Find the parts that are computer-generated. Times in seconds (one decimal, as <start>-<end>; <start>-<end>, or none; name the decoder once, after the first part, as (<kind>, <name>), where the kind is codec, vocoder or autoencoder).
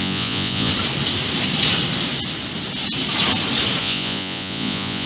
0.0-0.7 (vocoder, Vocos); 3.8-5.1